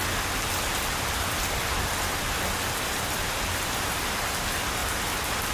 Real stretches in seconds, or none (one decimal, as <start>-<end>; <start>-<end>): 0.0-5.5